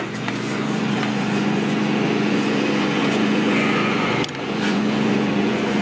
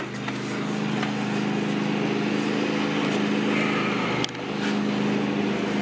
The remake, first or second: first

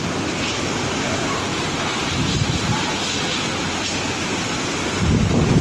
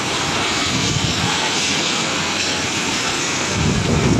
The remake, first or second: second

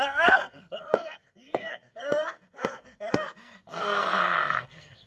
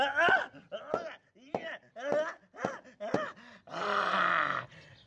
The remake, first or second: first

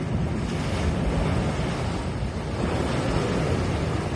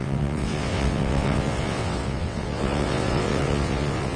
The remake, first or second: second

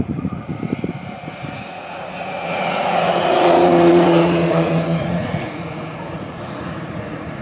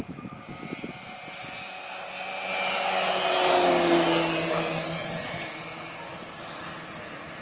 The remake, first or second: first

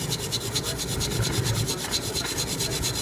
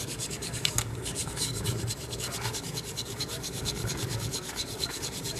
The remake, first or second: second